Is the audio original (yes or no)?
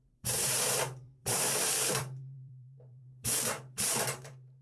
no